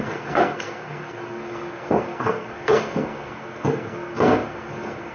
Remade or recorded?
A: remade